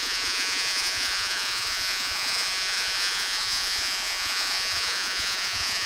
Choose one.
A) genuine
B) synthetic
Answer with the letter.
B